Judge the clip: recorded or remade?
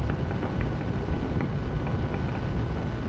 recorded